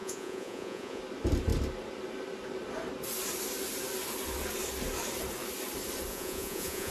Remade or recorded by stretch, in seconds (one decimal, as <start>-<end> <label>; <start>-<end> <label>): 0.0-1.0 remade; 1.0-6.1 recorded; 6.1-6.9 remade